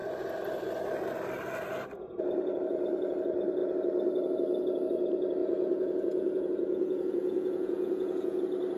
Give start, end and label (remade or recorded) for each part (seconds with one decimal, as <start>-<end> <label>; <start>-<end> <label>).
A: 0.0-5.4 recorded; 5.4-8.4 remade; 8.4-8.8 recorded